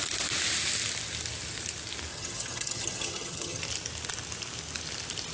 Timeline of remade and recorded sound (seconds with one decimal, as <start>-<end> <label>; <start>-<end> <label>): 0.0-2.1 recorded; 2.1-3.6 remade; 3.6-5.3 recorded